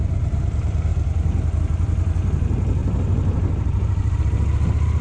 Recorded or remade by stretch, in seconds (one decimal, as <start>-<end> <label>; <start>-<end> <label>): 0.0-5.0 recorded